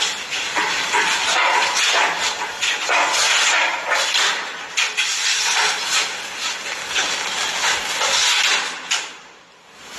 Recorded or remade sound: recorded